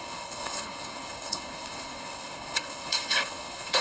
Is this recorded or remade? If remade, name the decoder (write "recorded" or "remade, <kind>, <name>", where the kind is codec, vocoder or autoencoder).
remade, codec, HILCodec